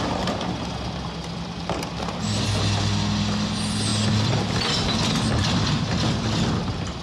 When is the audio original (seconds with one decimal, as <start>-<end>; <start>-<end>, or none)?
0.0-7.0